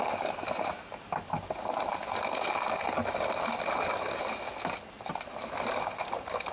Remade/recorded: recorded